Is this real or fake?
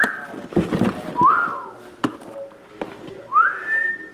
real